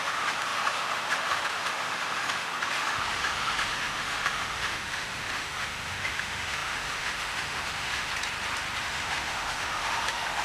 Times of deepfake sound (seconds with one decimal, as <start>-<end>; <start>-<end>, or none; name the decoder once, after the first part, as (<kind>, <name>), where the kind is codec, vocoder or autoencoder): 0.0-8.1 (autoencoder, DAC-VAE); 8.8-10.4